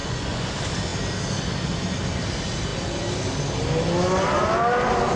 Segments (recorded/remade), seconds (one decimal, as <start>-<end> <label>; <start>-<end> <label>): 0.0-0.5 remade; 0.5-5.2 recorded